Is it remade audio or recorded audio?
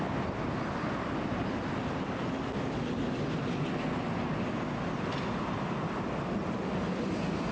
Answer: recorded